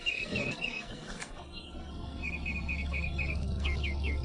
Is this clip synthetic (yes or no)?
yes